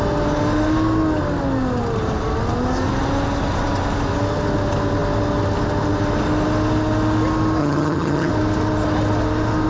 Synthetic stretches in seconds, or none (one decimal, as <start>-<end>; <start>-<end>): 7.6-8.3